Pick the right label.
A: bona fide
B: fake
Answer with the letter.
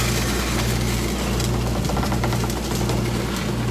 A